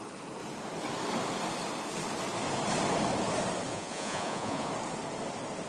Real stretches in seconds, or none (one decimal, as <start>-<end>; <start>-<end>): 0.0-3.7; 4.7-5.7